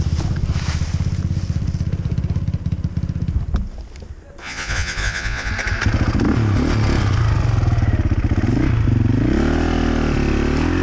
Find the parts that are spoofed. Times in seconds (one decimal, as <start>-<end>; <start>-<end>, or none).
4.4-5.5